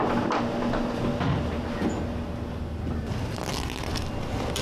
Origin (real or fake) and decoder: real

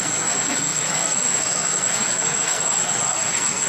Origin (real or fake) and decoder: fake, codec, SNAC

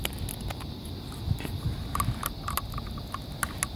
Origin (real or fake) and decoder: real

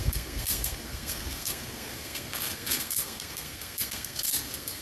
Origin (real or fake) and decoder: fake, codec, SNAC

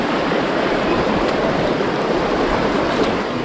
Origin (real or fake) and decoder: fake, vocoder, BigVGAN v2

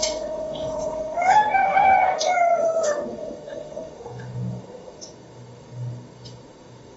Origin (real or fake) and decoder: fake, autoencoder, DAC-VAE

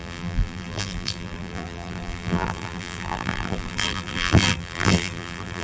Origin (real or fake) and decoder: fake, vocoder, BigVGAN v2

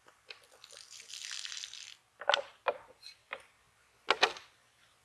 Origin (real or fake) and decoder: real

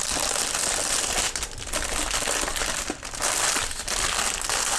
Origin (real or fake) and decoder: real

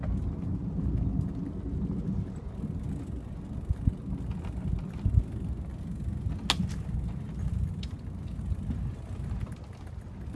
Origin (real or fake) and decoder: real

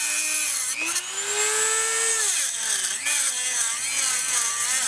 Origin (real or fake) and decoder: real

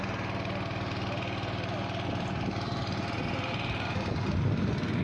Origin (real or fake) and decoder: real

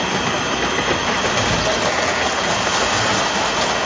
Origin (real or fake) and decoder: real